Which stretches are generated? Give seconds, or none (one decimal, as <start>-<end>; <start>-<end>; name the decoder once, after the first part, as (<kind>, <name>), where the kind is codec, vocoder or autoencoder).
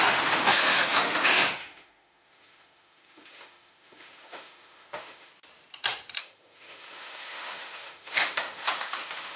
0.0-5.3 (autoencoder, DAC-VAE); 6.2-9.4